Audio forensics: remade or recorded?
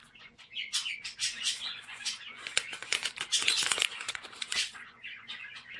remade